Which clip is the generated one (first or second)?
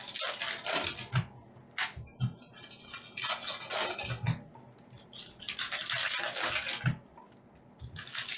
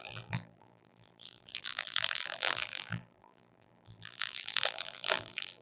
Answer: second